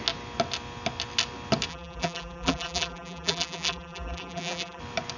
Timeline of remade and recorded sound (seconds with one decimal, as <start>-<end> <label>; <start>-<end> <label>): 0.0-1.7 recorded; 1.7-4.8 remade; 4.8-5.2 recorded